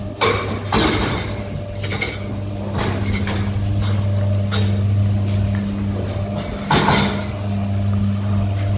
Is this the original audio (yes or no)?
yes